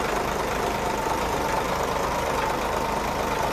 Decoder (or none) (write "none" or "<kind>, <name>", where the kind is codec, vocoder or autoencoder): none